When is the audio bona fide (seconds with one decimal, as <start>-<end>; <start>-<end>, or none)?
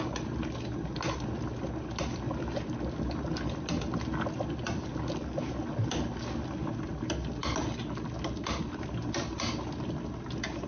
0.0-10.7